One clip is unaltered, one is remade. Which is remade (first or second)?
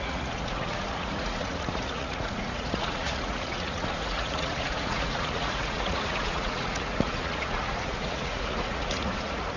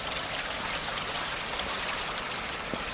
first